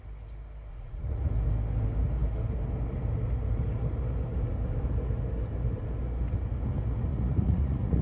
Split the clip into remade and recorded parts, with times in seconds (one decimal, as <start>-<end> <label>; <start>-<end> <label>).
0.0-0.7 recorded; 0.7-1.3 remade; 1.3-7.1 recorded; 7.1-8.0 remade